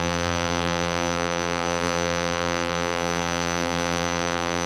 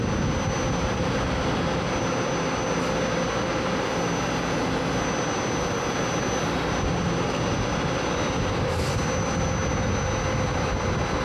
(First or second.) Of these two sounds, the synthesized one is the first